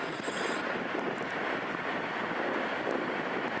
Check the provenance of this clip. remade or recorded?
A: recorded